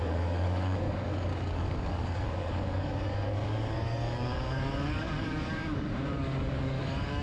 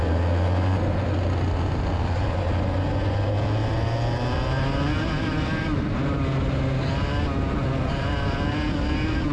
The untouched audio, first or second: second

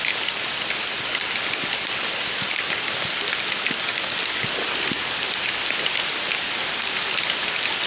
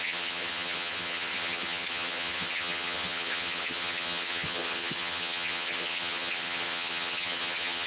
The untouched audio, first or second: first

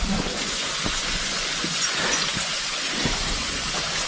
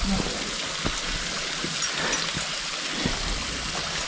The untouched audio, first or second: second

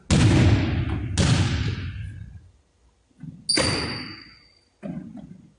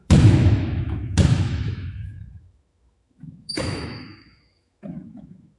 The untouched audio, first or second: first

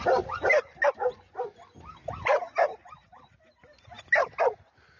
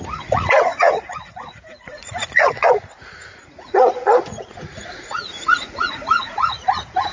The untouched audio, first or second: first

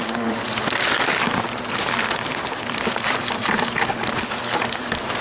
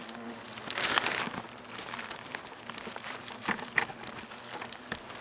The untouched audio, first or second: second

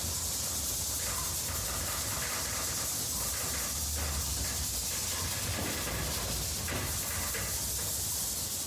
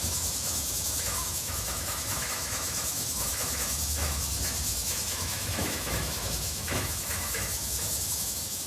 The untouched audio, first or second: first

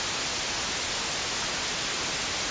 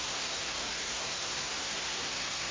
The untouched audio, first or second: first